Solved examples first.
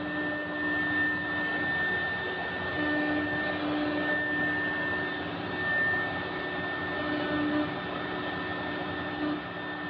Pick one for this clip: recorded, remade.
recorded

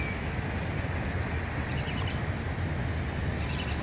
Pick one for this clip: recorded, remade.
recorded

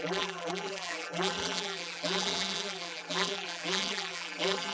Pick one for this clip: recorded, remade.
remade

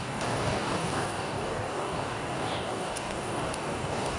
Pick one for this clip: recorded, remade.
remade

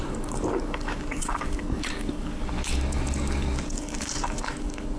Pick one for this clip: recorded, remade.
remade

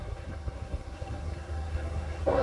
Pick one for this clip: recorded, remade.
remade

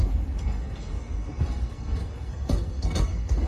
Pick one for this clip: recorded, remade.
remade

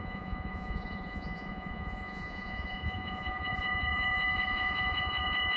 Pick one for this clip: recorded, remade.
remade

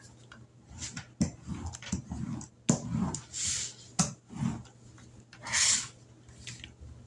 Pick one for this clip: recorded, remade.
recorded